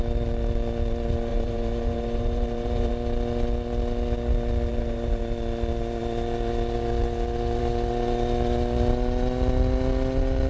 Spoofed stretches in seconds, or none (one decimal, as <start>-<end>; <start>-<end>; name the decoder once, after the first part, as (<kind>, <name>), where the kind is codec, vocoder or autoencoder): 1.3-2.9 (vocoder, BigVGAN v2); 4.7-5.2